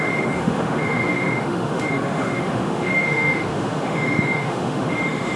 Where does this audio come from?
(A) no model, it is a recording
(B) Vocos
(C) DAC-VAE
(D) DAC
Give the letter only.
C